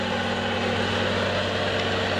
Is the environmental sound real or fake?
real